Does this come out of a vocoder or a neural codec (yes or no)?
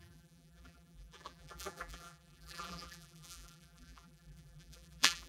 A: yes